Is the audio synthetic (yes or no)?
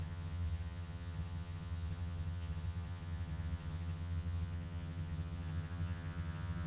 yes